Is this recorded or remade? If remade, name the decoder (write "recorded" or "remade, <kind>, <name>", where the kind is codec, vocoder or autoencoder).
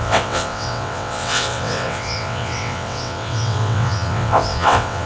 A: remade, vocoder, WaveNeXt